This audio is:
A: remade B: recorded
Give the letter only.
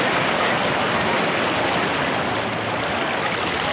B